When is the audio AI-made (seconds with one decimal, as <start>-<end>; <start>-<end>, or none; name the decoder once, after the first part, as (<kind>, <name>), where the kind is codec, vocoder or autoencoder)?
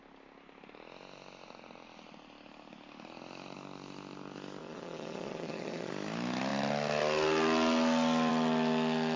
4.6-5.9 (vocoder, Vocos)